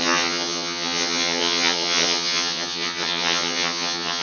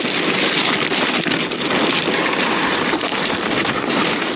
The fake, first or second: first